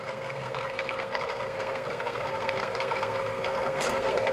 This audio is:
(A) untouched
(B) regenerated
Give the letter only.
B